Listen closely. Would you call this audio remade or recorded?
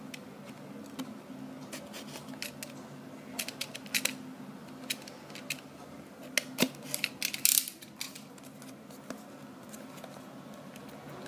recorded